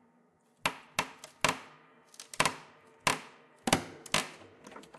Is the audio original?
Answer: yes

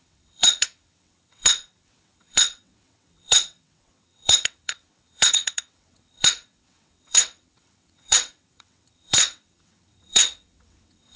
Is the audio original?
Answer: no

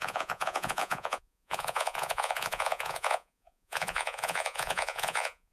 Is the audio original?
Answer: no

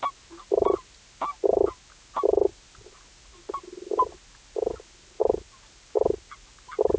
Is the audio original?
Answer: yes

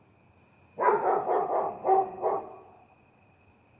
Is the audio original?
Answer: yes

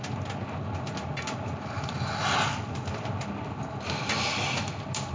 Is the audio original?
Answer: yes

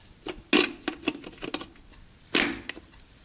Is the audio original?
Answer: yes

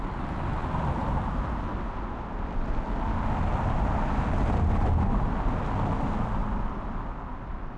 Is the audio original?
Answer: yes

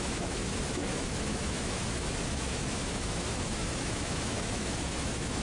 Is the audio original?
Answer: no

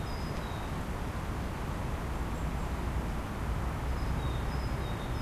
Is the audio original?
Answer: yes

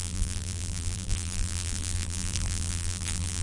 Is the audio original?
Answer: no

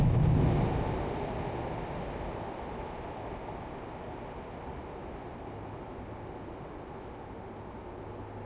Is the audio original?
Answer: yes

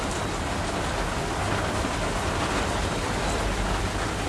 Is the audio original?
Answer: yes